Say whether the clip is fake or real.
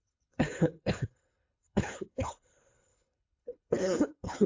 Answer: fake